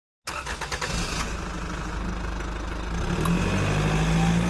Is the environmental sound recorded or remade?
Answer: recorded